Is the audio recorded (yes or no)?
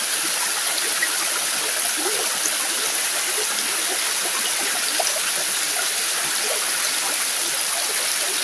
yes